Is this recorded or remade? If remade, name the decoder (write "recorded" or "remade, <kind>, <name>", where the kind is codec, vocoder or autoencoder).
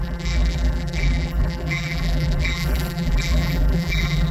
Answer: remade, vocoder, BigVGAN v2